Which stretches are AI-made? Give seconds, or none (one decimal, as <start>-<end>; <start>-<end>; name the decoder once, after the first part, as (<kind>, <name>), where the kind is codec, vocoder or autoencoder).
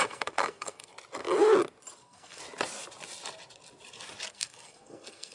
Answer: 0.0-0.9 (codec, SNAC); 2.0-2.4; 4.3-5.3